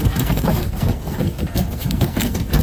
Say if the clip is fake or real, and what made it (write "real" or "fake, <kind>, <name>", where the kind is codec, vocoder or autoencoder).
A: fake, codec, SNAC